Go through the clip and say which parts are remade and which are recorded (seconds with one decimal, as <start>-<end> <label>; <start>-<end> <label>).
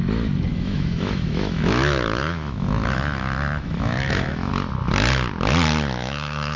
0.0-0.5 recorded; 0.5-4.5 remade; 4.5-6.0 recorded; 6.0-6.6 remade